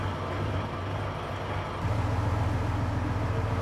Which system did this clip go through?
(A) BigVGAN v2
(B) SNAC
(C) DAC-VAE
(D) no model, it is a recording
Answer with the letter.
D